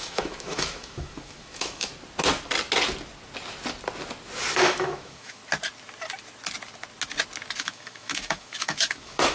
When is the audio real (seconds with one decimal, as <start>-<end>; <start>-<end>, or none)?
1.9-4.5; 5.4-7.6

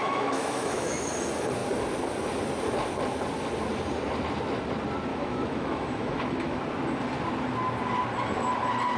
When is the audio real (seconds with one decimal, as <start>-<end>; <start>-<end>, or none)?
1.1-5.1; 6.6-9.0